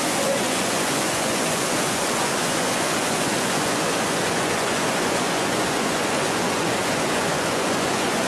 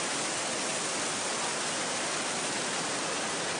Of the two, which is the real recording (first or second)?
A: second